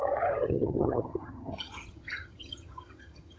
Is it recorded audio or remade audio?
remade